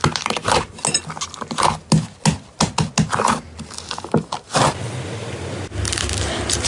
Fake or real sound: real